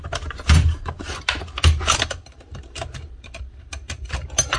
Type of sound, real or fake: real